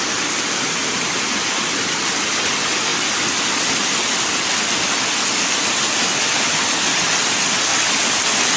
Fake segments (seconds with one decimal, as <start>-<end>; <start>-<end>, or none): 7.7-8.2